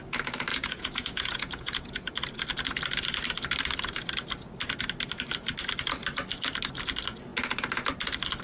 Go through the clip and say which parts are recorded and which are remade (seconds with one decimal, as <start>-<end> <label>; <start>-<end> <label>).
0.0-0.5 recorded; 0.5-2.1 remade; 2.1-8.4 recorded